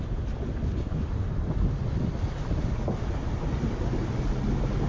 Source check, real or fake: real